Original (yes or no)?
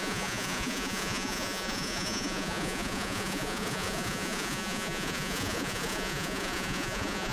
no